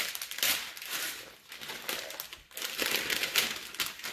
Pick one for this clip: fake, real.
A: real